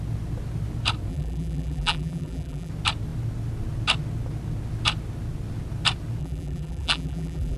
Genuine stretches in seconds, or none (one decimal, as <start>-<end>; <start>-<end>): 0.0-1.1; 2.7-6.2